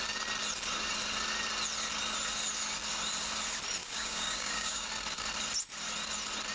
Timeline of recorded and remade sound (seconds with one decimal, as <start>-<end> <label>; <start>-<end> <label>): 0.0-3.8 recorded; 3.8-4.9 remade; 4.9-6.5 recorded